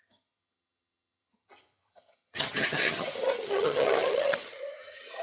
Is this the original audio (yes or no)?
no